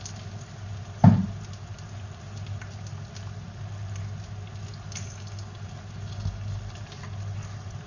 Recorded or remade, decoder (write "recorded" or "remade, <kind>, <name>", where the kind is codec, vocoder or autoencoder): recorded